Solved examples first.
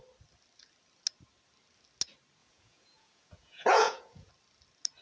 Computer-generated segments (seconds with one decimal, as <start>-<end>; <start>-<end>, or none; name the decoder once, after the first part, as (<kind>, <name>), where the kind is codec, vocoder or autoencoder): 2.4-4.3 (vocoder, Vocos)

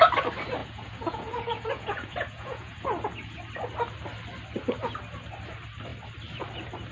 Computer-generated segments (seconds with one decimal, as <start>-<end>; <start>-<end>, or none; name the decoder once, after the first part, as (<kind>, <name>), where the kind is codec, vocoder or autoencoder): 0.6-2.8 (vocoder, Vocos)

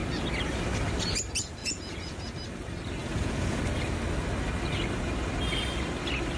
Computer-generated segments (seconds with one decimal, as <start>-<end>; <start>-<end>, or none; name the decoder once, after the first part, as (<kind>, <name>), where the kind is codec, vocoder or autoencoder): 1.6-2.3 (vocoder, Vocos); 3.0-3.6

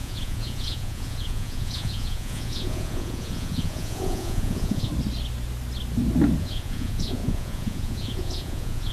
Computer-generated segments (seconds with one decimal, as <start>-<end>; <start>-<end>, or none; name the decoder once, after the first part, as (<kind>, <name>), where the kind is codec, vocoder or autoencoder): 0.0-4.9 (vocoder, Vocos); 6.4-8.9